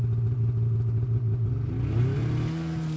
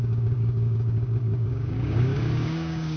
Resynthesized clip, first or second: second